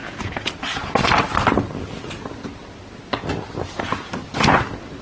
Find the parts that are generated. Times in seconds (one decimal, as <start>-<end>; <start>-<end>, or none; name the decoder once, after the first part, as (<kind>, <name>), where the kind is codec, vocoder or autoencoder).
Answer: 0.0-0.5 (vocoder, Vocos)